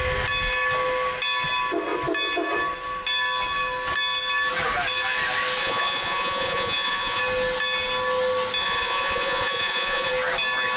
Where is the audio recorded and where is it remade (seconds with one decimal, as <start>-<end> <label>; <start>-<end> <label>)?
0.0-5.6 recorded; 5.6-7.2 remade; 7.2-8.6 recorded; 8.6-10.1 remade; 10.1-10.8 recorded